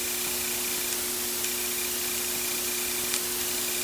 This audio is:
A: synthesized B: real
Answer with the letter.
B